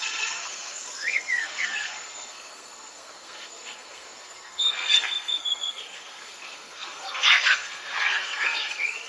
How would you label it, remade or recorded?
remade